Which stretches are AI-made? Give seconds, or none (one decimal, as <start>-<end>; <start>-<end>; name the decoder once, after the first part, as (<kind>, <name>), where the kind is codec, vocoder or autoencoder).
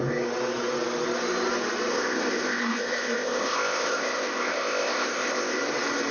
1.9-5.6 (codec, ZipCodec)